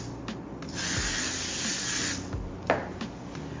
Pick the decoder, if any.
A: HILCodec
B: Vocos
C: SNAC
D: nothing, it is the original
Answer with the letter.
D